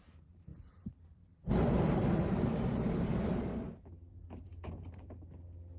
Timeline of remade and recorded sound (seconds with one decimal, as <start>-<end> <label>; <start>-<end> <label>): 0.0-3.5 remade; 3.5-4.1 recorded; 4.1-4.5 remade; 4.5-5.8 recorded